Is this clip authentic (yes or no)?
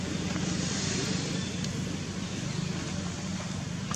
yes